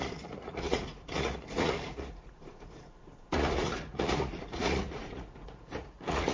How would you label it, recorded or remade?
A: remade